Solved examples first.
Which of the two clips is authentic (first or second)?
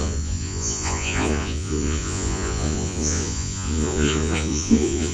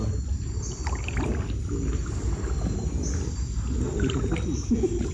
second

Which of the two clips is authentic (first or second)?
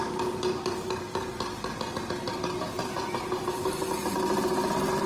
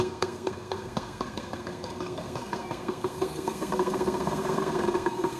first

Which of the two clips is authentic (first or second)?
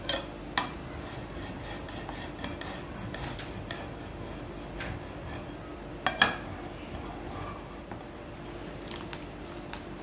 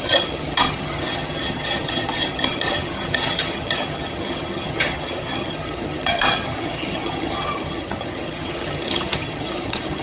first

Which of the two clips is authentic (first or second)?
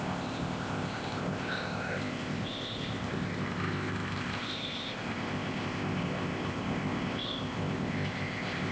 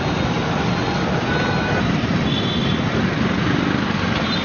second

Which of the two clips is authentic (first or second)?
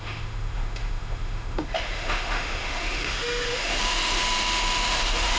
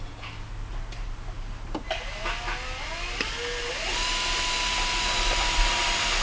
second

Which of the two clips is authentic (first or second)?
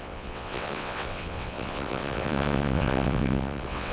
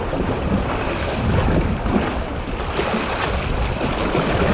second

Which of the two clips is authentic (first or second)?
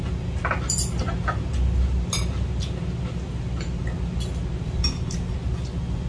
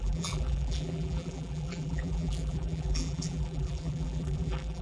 first